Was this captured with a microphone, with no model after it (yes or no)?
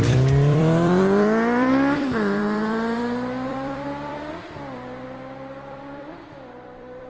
no